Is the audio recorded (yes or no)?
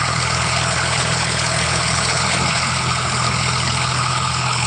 no